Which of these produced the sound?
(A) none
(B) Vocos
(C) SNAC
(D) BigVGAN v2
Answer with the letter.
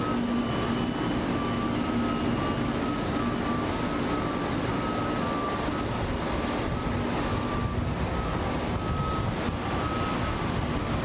A